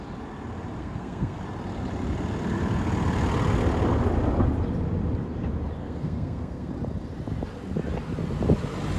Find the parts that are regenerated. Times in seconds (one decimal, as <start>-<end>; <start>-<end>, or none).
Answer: 0.8-1.4; 5.8-6.7